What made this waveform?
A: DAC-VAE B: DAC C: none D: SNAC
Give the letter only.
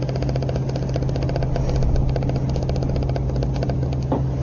C